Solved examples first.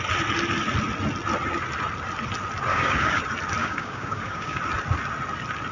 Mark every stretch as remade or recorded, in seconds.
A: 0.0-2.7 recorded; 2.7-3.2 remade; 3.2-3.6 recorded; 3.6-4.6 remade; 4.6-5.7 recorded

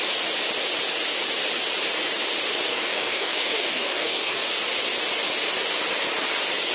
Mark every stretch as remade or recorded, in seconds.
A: 0.0-2.7 recorded; 2.7-4.5 remade; 4.5-6.7 recorded

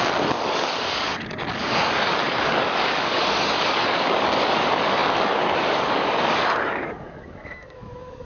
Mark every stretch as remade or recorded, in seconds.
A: 0.0-8.2 remade

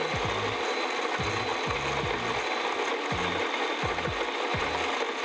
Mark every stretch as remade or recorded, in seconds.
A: 0.0-5.2 recorded

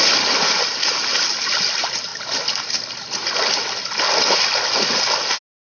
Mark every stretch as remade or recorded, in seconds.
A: 0.0-5.7 recorded

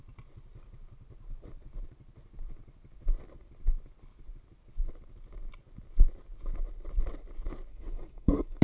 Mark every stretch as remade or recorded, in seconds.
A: 0.0-7.7 recorded; 7.7-8.6 remade

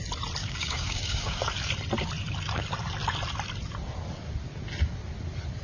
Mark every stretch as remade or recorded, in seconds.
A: 0.0-0.4 recorded; 0.4-1.4 remade; 1.4-5.6 recorded

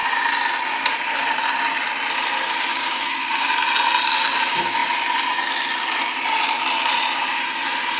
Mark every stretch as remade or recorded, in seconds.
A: 0.0-2.7 recorded; 2.7-3.5 remade; 3.5-8.0 recorded